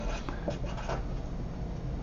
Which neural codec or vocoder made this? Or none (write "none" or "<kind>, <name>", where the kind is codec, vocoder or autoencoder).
none